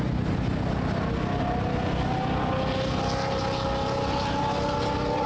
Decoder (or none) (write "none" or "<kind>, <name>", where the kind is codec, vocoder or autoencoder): none